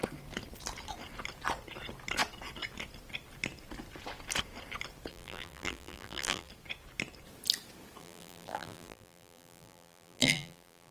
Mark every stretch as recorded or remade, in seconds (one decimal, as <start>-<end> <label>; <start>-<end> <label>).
0.0-5.1 recorded; 5.1-6.5 remade; 6.5-8.0 recorded; 8.0-10.9 remade